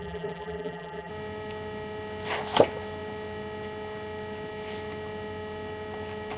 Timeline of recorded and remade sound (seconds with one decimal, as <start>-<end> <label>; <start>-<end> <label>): 0.0-1.1 remade; 1.1-6.4 recorded